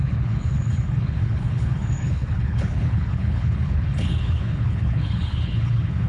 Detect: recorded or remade remade